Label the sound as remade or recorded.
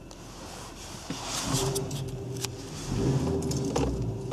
recorded